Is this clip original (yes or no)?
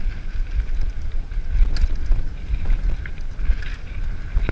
yes